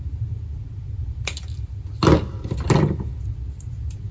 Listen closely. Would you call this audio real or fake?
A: real